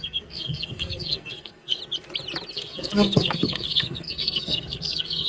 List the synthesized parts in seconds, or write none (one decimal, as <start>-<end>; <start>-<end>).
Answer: 0.0-1.8; 2.5-5.3